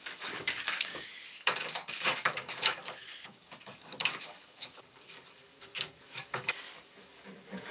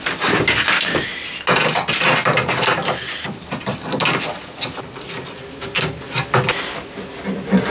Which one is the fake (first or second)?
first